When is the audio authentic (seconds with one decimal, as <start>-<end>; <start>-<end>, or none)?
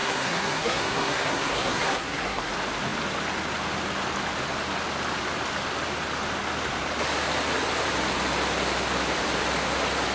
2.5-10.1